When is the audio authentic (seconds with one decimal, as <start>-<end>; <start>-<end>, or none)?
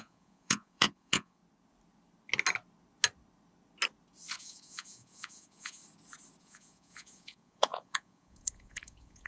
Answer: 1.4-4.4; 5.8-6.4